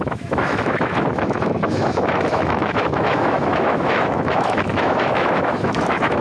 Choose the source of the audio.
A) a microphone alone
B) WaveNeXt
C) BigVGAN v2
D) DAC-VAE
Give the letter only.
D